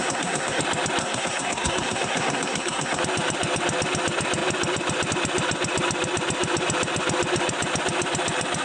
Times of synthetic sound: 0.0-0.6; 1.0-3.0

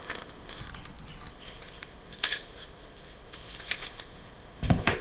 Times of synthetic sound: 0.0-0.6; 1.3-5.0

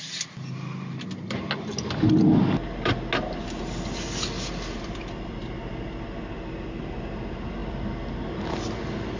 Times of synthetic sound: none

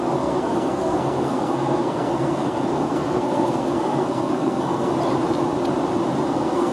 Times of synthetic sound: 0.0-4.9; 6.3-6.7

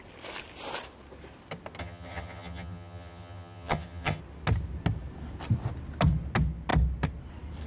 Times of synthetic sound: 1.8-4.2

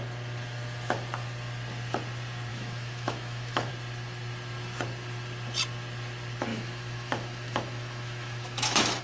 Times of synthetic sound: 2.5-3.7; 6.5-9.0